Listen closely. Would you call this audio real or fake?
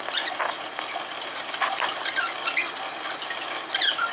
real